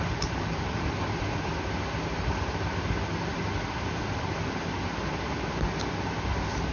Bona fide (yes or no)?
yes